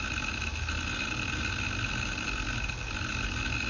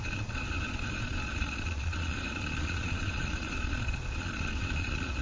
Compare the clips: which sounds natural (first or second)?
first